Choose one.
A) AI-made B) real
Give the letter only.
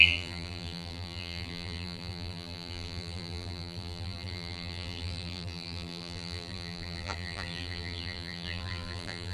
A